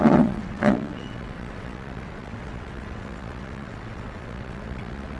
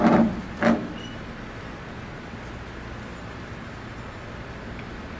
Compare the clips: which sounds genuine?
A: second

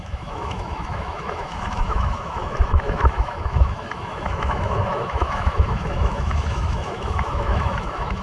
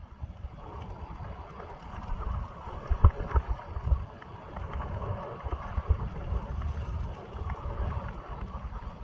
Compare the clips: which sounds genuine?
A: second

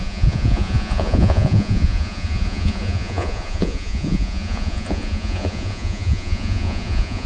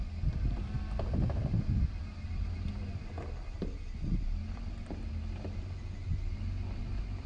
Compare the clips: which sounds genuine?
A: second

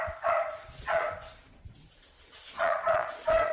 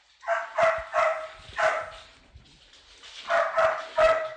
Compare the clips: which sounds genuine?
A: second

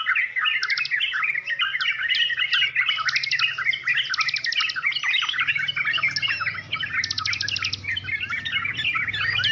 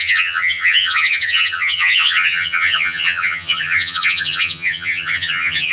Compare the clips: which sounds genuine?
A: first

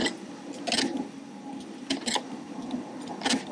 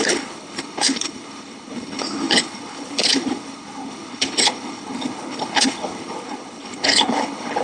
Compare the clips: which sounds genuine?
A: first